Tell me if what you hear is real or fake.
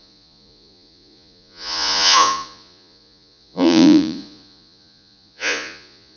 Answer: fake